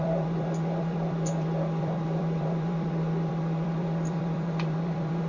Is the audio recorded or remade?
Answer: remade